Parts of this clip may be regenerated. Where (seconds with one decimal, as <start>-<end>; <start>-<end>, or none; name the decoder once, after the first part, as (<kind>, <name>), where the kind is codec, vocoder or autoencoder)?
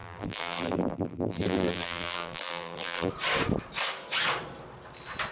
0.0-3.1 (vocoder, BigVGAN v2)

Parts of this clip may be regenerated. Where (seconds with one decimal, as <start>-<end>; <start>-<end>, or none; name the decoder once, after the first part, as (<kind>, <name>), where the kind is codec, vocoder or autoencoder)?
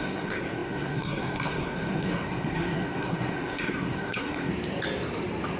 0.0-4.5 (codec, SNAC)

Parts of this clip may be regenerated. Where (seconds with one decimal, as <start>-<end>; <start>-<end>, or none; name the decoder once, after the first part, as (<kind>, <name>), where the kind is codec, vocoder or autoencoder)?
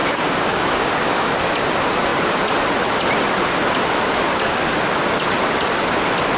0.0-1.5 (codec, DAC)